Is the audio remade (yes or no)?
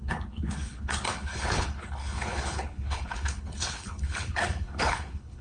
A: yes